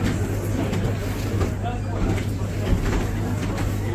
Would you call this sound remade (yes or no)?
no